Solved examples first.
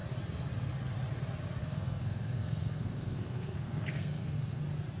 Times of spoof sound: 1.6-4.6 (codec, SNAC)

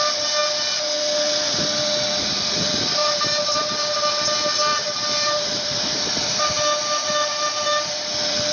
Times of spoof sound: 3.0-4.1 (vocoder, BigVGAN v2); 4.7-8.0

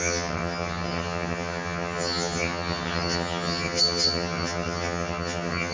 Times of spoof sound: 0.0-5.7 (vocoder, HiFi-GAN)

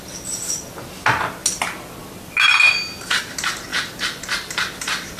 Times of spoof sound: 3.7-5.2 (vocoder, BigVGAN v2)

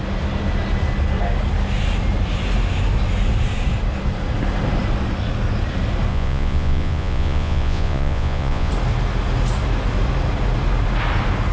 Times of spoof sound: 6.1-8.7 (vocoder, Vocos)

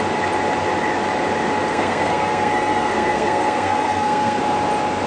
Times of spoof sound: 1.7-4.4 (codec, SNAC)

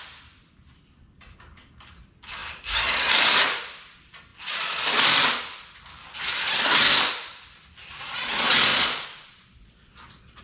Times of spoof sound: 8.7-10.4 (vocoder, Vocos)